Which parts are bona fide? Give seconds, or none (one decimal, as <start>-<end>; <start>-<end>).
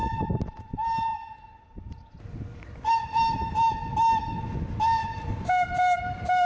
0.0-5.0